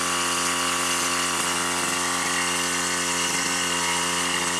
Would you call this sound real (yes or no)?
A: yes